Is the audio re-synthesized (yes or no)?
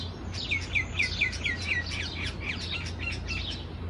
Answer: no